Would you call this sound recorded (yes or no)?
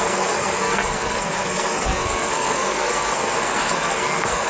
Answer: no